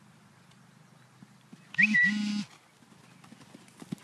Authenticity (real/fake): real